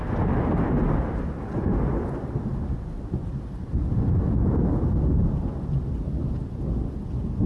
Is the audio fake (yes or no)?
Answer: no